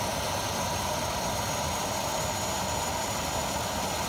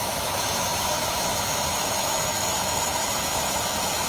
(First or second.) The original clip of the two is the first